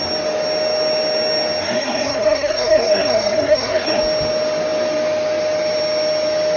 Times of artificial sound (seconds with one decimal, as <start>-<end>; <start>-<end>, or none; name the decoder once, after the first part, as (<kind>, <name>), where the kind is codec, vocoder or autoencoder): 1.6-4.0 (codec, SNAC)